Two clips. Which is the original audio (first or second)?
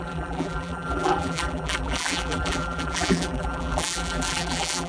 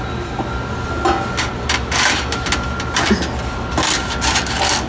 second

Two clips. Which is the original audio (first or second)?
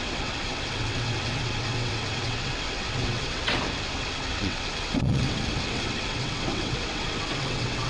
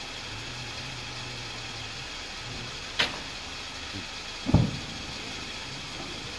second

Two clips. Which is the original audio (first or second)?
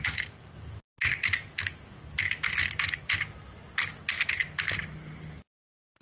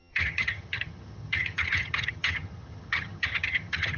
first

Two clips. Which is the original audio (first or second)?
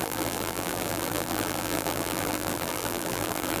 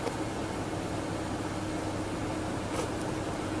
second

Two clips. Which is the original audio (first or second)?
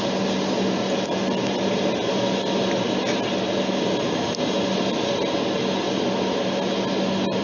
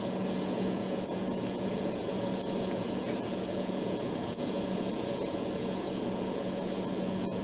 first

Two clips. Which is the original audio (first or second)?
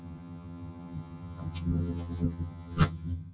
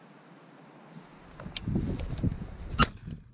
second